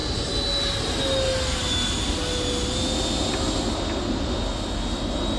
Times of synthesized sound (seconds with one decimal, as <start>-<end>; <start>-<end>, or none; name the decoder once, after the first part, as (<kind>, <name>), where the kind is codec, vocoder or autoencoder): none